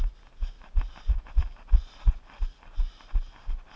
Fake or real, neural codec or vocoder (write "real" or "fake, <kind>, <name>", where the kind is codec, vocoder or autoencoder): real